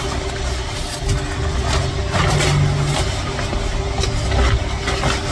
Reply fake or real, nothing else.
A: real